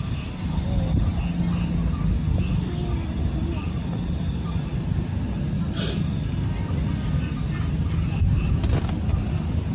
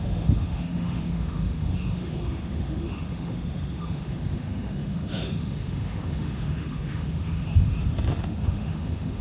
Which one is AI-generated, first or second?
second